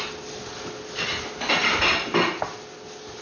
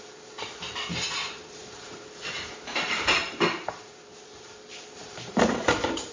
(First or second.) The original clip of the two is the first